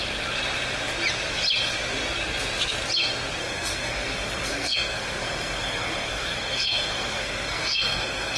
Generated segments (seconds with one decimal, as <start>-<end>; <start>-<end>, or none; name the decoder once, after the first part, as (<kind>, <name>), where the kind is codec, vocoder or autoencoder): 3.4-8.4 (codec, SNAC)